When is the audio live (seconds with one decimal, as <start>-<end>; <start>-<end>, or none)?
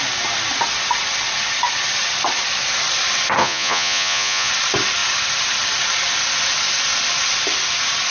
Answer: 0.0-3.4; 4.5-8.1